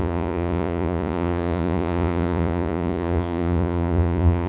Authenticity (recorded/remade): remade